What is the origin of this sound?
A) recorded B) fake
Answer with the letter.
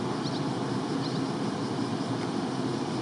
A